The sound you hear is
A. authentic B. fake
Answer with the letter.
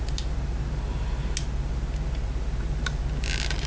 A